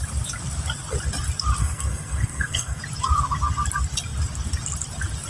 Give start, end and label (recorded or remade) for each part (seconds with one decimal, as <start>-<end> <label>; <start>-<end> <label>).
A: 0.0-1.6 recorded; 1.6-2.8 remade; 2.8-5.3 recorded